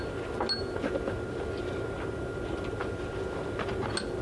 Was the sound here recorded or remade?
recorded